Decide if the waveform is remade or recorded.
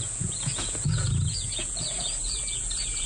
remade